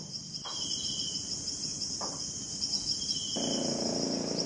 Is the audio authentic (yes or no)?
yes